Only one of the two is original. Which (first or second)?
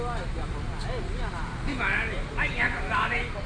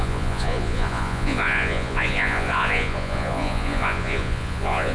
first